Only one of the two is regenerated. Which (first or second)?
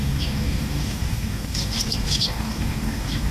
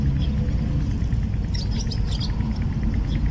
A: first